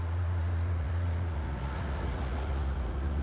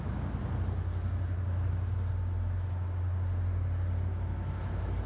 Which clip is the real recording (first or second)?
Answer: second